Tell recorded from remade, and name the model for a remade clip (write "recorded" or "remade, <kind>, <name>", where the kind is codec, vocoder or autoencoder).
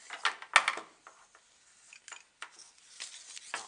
recorded